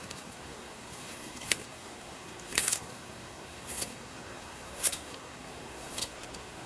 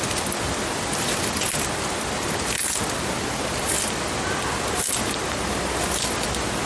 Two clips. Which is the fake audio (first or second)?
first